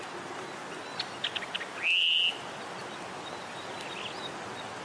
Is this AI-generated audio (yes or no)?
no